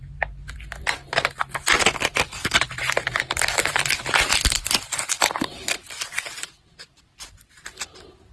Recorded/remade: recorded